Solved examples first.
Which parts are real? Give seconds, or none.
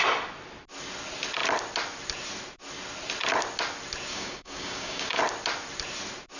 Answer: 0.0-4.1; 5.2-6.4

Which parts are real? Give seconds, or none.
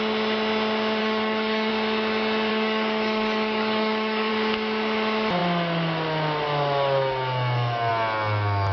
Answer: 0.0-1.0; 1.7-2.5; 4.3-8.7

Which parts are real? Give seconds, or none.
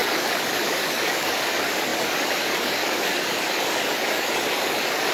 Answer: none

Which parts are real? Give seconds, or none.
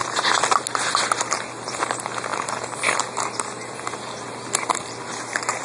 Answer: 0.0-5.6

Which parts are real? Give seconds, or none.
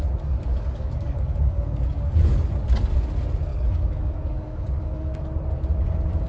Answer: 0.0-0.5; 2.4-3.5; 5.2-6.3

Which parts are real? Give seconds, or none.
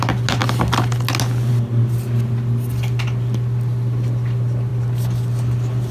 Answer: 0.0-5.9